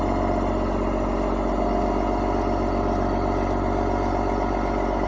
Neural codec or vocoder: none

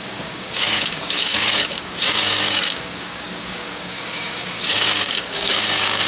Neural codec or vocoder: codec, DAC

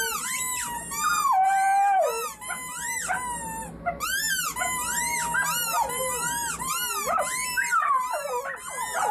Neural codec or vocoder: none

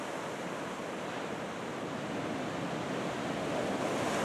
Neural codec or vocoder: none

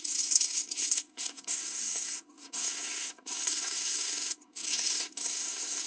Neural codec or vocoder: codec, SNAC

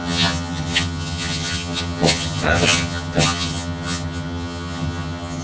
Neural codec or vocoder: vocoder, HiFi-GAN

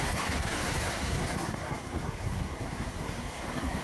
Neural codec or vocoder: codec, SNAC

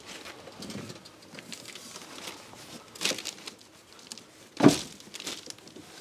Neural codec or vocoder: none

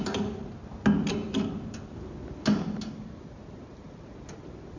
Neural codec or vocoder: none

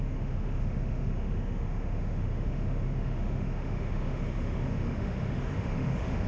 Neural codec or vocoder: autoencoder, DAC-VAE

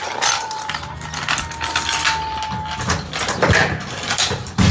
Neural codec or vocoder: none